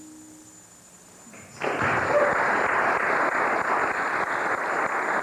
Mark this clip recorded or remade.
recorded